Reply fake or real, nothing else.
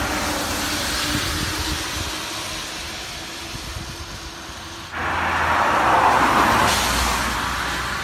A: real